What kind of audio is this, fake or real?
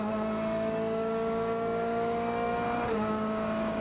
fake